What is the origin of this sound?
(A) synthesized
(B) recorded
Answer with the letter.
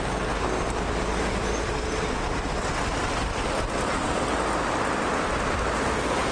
B